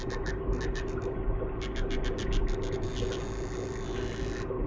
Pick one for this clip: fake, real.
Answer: real